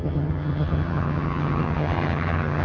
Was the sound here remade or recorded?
remade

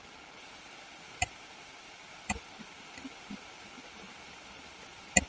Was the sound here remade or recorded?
recorded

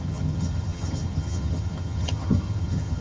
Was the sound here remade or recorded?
remade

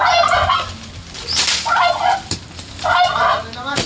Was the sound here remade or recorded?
recorded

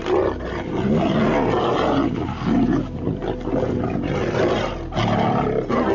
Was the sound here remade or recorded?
recorded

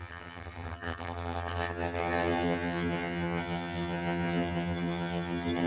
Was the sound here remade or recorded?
remade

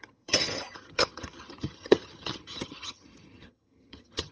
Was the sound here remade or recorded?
remade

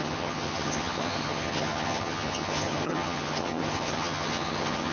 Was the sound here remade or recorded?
remade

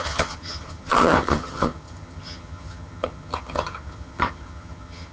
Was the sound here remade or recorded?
remade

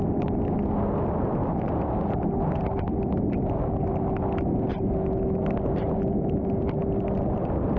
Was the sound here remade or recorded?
recorded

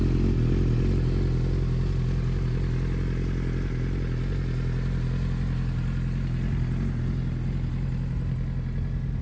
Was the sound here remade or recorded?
recorded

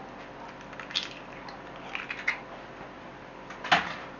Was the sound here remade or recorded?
recorded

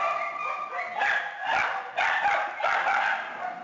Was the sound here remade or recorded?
recorded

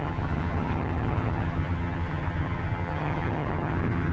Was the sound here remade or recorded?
remade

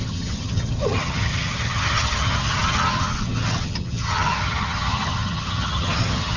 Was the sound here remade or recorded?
remade